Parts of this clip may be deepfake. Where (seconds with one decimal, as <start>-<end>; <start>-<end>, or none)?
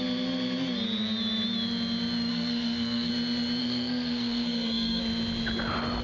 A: 2.3-3.1; 3.6-5.0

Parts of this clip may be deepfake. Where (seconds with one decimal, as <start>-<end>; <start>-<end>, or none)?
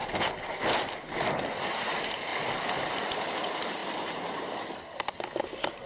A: 1.7-2.3; 3.1-3.8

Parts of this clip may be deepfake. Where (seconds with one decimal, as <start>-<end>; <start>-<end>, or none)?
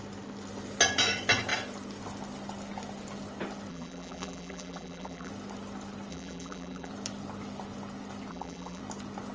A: 3.7-5.3; 6.1-6.9; 8.3-8.8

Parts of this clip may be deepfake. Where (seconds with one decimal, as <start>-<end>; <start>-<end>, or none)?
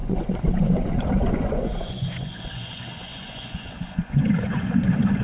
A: 0.0-5.2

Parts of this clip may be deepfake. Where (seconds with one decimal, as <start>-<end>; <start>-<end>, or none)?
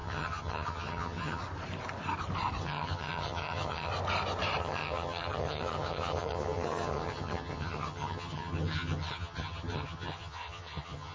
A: 0.0-1.4; 2.6-3.9; 4.6-11.1